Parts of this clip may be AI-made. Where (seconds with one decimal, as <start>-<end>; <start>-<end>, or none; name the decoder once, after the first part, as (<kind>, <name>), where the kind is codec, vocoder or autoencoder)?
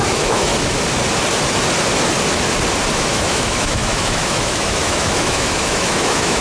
0.0-0.5 (autoencoder, DAC-VAE); 2.9-6.4